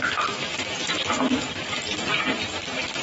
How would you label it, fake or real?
real